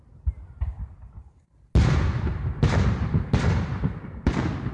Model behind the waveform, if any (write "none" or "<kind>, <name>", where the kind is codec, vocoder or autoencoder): none